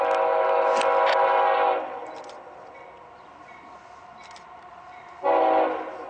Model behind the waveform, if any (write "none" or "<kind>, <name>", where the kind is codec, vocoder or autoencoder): none